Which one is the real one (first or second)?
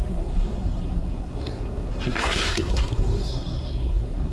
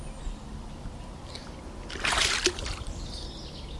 second